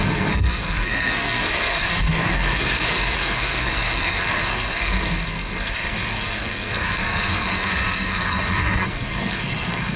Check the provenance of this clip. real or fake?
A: fake